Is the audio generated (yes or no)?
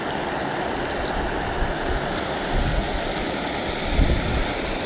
no